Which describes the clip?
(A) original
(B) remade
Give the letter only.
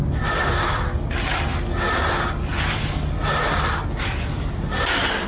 A